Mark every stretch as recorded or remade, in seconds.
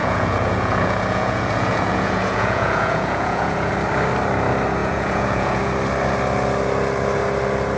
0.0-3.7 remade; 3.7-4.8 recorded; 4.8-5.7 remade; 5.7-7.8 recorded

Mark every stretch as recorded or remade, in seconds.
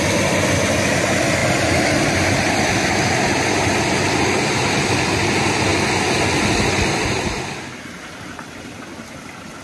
0.0-9.6 recorded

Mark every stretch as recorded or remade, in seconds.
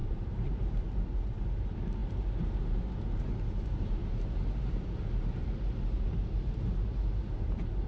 0.0-4.0 remade; 4.0-5.4 recorded; 5.4-7.9 remade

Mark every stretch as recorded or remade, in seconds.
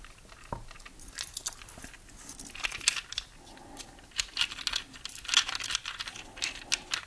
0.0-7.1 recorded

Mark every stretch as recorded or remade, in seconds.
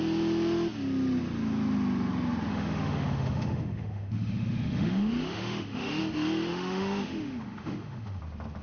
0.0-2.5 recorded; 2.5-6.0 remade; 6.0-6.5 recorded; 6.5-8.2 remade; 8.2-8.6 recorded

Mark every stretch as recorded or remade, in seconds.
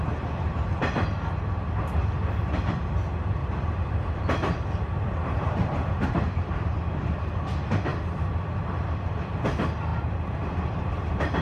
0.0-3.4 recorded; 3.4-6.7 remade; 6.7-9.9 recorded; 9.9-10.4 remade; 10.4-11.4 recorded